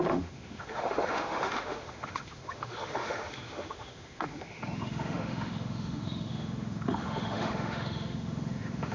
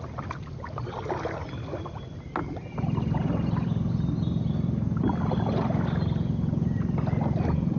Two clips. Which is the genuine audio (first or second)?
second